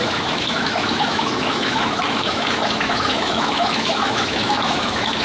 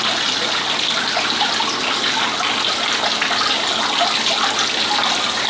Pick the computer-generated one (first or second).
first